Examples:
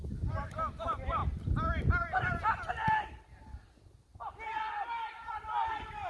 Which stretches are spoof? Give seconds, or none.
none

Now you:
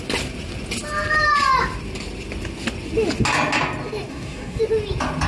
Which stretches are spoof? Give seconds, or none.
4.1-4.6 (codec, SNAC)

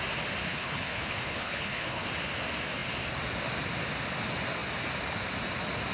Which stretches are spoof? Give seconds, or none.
0.4-2.1 (codec, HILCodec)

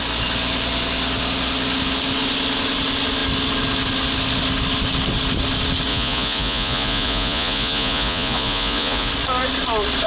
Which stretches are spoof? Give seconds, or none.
5.9-9.1 (vocoder, Vocos)